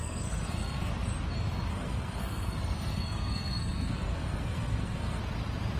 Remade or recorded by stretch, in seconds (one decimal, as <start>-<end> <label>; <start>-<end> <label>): 0.0-0.9 remade; 0.9-1.7 recorded; 1.7-5.2 remade; 5.2-5.8 recorded